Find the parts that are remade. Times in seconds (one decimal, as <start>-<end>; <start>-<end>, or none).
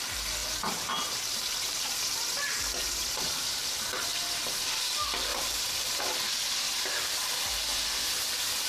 0.4-4.0; 5.3-6.0